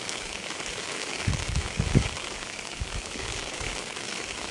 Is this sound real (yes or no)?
no